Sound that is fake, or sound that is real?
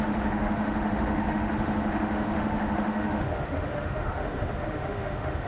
fake